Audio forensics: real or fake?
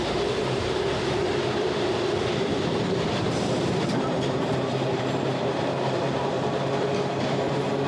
fake